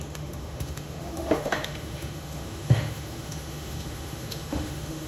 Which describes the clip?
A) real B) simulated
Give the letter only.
B